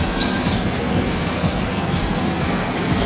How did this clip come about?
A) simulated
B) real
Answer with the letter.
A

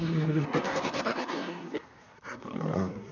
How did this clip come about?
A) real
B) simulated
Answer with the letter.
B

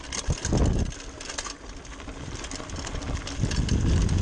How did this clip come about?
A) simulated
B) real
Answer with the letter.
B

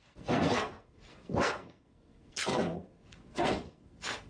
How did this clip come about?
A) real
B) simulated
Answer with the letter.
B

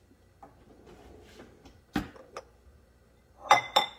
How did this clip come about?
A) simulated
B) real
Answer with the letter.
B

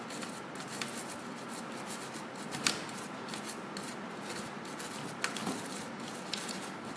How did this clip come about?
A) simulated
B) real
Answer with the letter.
B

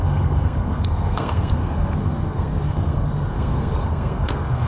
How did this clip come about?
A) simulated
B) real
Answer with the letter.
A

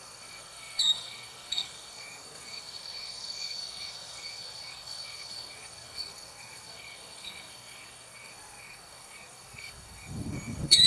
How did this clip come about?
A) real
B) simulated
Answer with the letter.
B